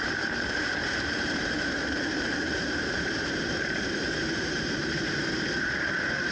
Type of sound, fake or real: fake